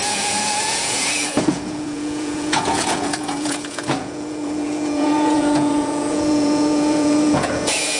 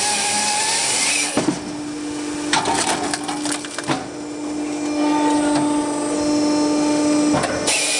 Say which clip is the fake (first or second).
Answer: first